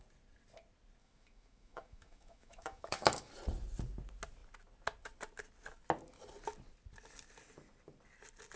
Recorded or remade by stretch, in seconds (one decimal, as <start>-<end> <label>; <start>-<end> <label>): 0.0-1.0 recorded; 1.0-3.3 remade; 3.3-8.6 recorded